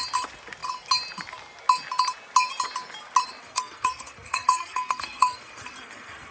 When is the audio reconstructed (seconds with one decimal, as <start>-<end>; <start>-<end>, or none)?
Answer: 3.4-6.3

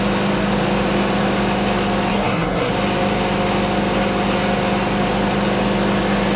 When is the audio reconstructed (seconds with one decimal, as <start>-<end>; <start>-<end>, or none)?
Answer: 2.1-2.7

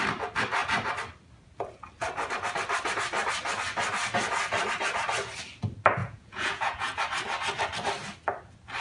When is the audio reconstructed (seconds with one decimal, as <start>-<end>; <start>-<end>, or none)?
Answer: 6.0-7.0

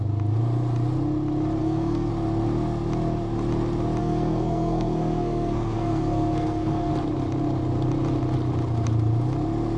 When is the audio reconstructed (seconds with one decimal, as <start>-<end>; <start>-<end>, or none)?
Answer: 1.6-2.1; 4.0-6.9

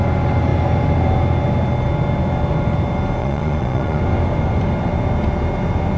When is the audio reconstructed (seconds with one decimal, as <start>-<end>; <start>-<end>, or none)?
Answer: 3.2-4.0